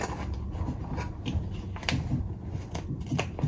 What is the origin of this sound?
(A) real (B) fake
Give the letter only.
A